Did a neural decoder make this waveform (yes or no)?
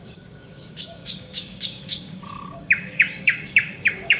yes